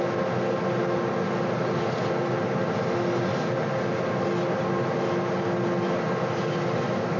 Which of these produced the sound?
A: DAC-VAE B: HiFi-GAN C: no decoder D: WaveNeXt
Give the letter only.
C